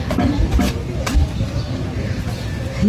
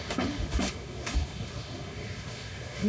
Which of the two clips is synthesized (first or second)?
second